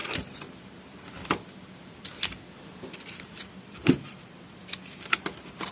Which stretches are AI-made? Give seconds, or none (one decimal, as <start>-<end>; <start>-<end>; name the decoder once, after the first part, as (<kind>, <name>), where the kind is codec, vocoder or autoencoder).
none